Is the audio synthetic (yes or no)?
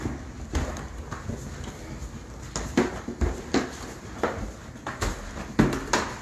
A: no